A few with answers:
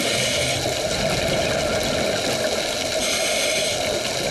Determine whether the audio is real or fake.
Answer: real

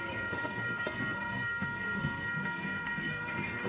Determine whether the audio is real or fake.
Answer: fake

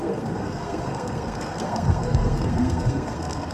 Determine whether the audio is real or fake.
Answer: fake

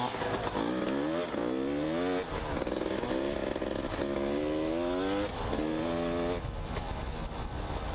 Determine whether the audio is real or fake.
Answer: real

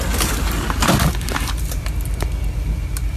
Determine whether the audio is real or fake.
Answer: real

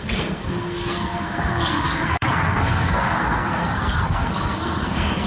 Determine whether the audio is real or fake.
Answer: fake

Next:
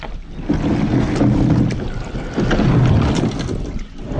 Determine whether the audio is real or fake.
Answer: real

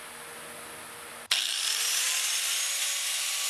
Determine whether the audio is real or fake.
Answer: real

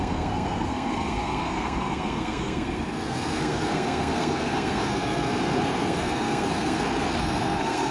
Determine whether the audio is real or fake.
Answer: fake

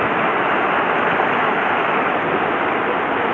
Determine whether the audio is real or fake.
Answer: real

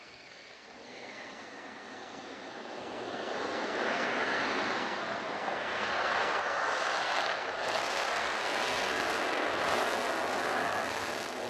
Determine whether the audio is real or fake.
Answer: fake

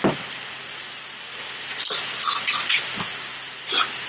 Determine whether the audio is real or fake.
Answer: real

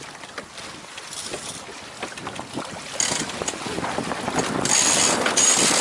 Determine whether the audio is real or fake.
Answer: real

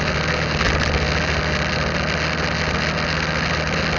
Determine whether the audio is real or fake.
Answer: real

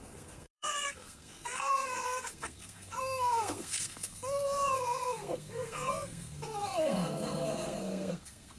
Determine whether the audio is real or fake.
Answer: fake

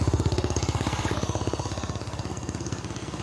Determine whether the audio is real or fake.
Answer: fake